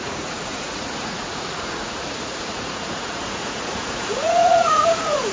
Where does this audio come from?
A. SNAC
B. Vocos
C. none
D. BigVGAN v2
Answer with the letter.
B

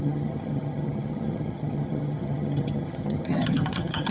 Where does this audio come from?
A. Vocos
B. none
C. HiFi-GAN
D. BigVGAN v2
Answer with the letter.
C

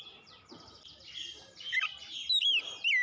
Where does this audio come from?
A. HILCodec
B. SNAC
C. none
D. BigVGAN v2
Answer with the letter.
C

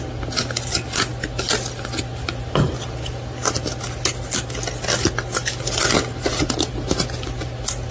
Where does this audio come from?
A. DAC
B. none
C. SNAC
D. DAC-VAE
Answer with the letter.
B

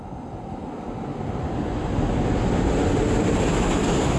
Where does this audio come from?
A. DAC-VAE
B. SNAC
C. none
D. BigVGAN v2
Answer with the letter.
C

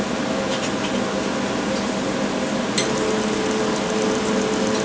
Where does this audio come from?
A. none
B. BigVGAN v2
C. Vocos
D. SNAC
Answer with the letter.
A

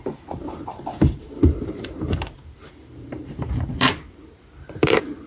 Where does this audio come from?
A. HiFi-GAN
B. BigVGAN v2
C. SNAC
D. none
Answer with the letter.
B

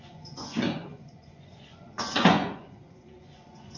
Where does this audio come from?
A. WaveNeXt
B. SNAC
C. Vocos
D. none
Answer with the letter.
C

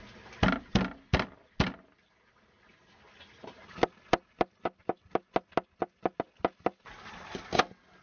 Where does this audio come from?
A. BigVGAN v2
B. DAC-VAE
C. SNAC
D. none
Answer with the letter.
D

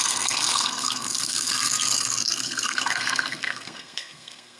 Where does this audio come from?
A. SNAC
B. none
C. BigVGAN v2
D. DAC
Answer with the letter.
A